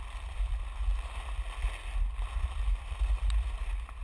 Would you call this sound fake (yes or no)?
no